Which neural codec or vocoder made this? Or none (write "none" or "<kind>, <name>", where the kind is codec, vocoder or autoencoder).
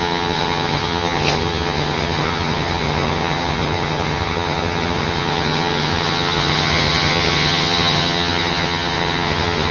vocoder, HiFi-GAN